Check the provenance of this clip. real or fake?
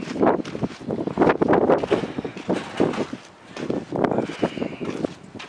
real